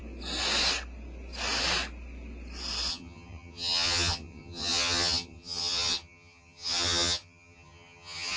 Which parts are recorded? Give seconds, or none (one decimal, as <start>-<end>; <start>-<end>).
0.0-2.9